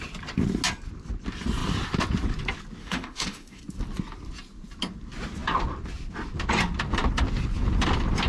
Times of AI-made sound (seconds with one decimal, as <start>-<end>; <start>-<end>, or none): 2.8-3.6